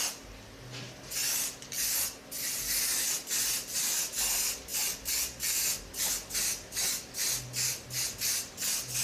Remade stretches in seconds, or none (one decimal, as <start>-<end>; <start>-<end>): none